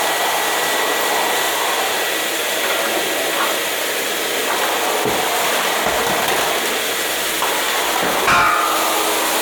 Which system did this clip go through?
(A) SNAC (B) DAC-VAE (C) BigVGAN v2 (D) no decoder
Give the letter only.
D